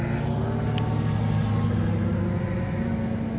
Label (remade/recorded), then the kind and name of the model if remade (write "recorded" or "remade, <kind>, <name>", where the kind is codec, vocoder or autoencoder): recorded